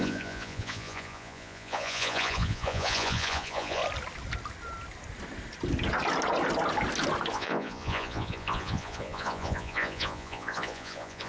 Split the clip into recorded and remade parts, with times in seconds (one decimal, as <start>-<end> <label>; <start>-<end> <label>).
0.0-3.8 remade; 3.8-7.3 recorded; 7.3-11.3 remade